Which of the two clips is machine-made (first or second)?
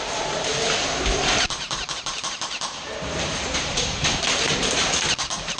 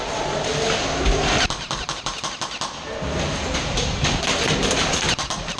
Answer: first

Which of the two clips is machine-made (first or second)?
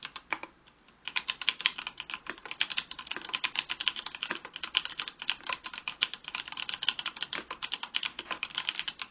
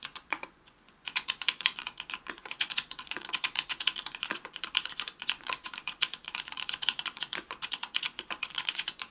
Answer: second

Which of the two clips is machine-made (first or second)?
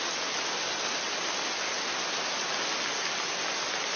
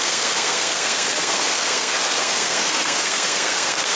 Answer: second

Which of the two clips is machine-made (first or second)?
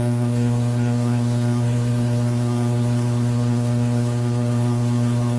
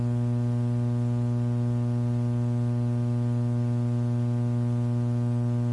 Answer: first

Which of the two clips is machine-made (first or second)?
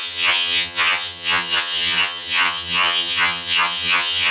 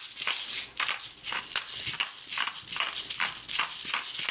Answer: first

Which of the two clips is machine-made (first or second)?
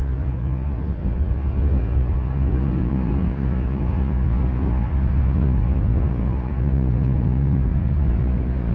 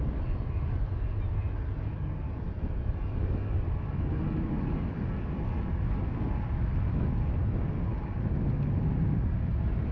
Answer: first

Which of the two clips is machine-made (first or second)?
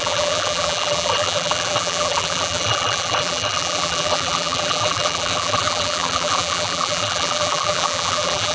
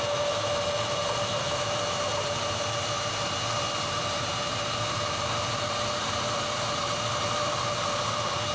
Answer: first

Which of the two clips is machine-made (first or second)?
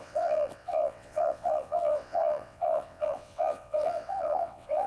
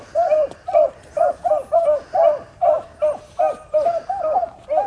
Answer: first